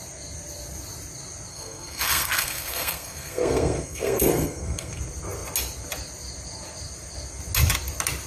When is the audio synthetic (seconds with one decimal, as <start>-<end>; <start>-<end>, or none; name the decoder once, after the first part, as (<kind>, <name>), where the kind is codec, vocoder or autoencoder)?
1.5-5.0 (codec, SNAC)